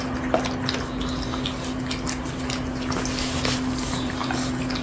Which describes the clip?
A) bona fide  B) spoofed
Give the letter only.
A